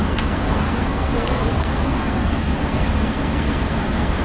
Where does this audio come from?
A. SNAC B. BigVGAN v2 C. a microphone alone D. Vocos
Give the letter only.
A